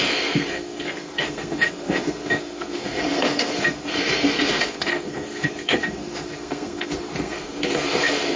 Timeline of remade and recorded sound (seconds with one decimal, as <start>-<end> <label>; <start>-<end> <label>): 0.0-8.4 remade

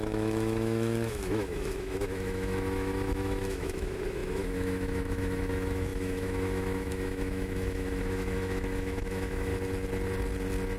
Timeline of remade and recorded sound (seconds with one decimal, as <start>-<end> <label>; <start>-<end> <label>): 0.0-9.5 remade; 9.5-10.8 recorded

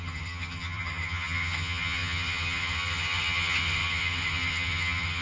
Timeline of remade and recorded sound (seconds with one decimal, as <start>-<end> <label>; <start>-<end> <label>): 0.0-5.2 remade